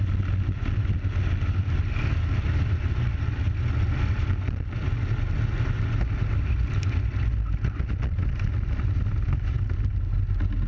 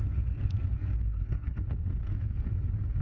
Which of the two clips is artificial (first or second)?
second